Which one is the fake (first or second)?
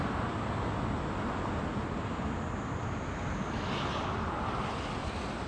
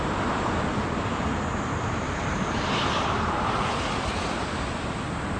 second